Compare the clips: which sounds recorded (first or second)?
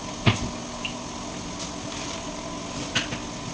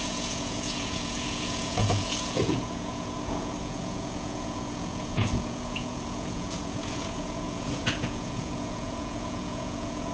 first